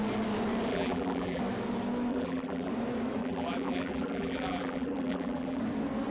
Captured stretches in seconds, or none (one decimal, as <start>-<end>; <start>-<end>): 0.0-0.7; 1.4-2.1; 2.7-3.2; 5.6-6.1